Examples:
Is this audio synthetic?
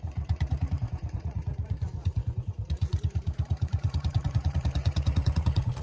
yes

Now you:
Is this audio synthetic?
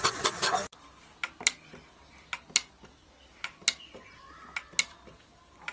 no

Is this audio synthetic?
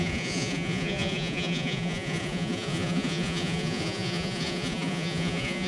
yes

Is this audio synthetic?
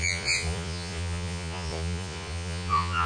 yes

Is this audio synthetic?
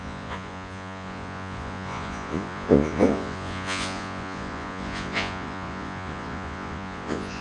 yes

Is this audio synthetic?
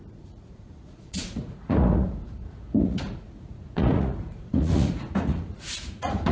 yes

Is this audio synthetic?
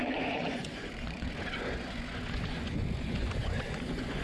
yes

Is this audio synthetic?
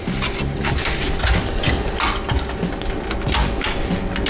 no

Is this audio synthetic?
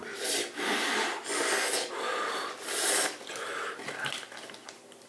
no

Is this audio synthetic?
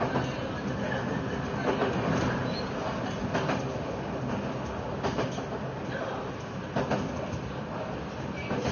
no